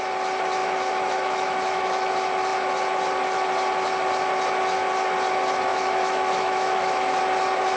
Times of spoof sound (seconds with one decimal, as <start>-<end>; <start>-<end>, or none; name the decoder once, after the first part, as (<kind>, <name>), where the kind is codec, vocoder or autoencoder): 0.6-2.1 (autoencoder, DAC-VAE); 5.7-7.2